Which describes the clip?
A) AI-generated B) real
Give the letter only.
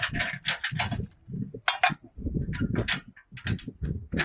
B